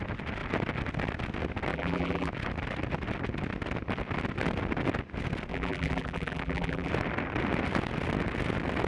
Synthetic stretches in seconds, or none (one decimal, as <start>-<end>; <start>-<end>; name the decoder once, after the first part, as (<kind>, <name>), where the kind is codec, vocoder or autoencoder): 1.7-2.3 (vocoder, BigVGAN v2); 5.5-6.9